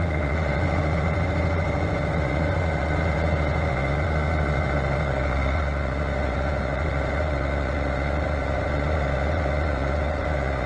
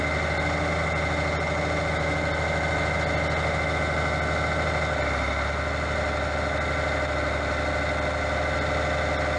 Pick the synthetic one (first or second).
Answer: first